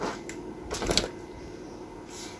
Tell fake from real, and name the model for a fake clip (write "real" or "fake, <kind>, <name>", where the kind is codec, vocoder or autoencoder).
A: real